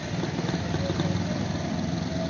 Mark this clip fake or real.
real